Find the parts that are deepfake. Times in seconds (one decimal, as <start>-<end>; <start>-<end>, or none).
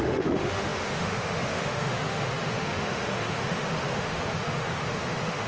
0.0-5.5